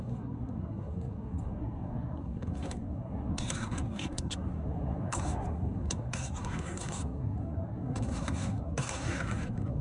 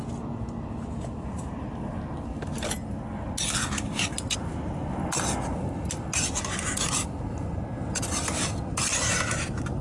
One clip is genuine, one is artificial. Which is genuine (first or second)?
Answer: second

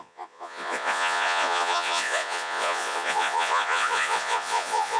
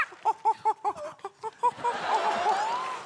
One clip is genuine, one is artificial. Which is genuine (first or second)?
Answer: second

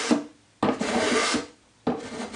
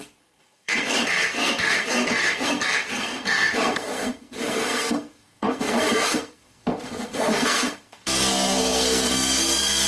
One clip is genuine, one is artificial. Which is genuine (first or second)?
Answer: first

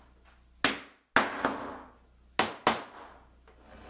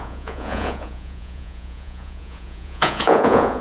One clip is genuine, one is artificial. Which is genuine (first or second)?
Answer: first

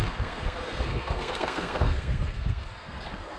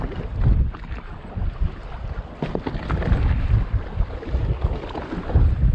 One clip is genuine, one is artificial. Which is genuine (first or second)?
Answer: second